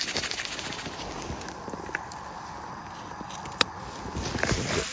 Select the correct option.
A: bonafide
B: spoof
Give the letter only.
A